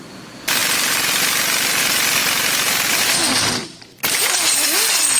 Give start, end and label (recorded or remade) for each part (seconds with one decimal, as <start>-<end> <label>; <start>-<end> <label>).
0.0-0.6 recorded; 0.6-1.8 remade; 1.8-2.2 recorded; 2.2-2.9 remade; 2.9-3.6 recorded; 3.6-4.2 remade; 4.2-5.2 recorded